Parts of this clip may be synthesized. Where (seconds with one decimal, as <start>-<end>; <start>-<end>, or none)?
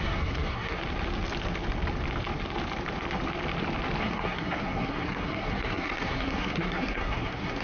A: 0.0-0.8; 4.0-7.6